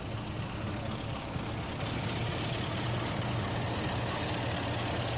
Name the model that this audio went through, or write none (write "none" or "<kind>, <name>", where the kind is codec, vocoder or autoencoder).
none